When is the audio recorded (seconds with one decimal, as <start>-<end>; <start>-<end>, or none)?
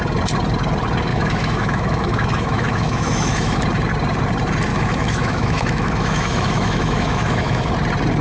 0.0-1.1; 3.6-4.7; 7.7-8.2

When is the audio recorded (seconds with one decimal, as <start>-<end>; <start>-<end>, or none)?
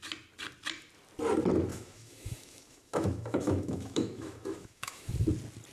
0.0-1.7; 5.1-5.7